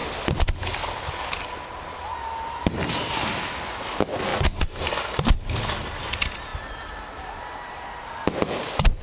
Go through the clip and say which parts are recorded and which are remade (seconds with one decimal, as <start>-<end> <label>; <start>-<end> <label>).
0.0-1.4 remade; 1.4-4.3 recorded; 4.3-4.9 remade; 4.9-6.5 recorded; 6.5-8.1 remade; 8.1-9.0 recorded